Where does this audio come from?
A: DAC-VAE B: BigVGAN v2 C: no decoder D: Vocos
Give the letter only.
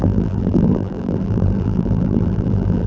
B